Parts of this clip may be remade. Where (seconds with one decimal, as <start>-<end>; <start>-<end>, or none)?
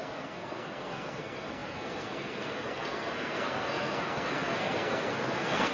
0.0-5.7